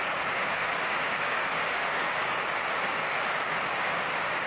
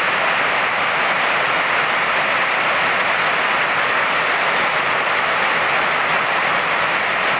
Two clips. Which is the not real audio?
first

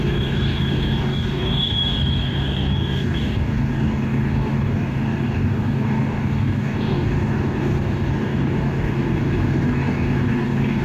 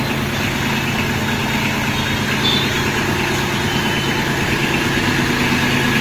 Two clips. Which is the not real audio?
first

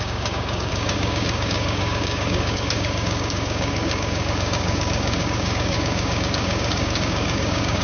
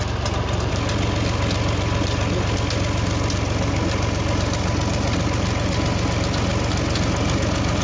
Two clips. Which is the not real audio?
first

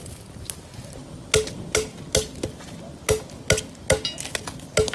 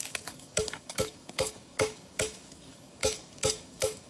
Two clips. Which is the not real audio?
second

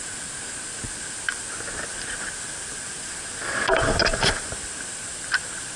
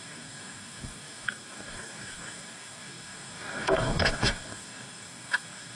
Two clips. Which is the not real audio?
second